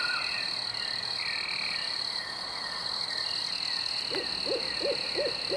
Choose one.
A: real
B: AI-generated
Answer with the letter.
A